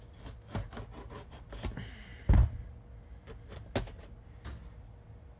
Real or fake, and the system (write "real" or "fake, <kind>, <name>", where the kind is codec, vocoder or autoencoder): real